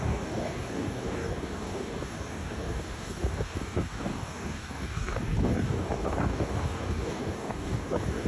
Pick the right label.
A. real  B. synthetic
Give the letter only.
B